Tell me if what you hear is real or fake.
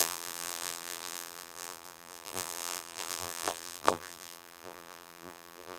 fake